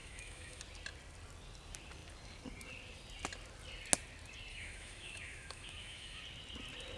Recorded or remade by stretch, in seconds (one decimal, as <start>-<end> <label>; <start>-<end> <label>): 0.0-0.6 remade; 0.6-4.5 recorded; 4.5-6.2 remade; 6.2-7.0 recorded